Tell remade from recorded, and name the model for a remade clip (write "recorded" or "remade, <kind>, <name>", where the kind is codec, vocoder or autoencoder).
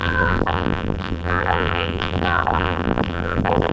remade, vocoder, BigVGAN v2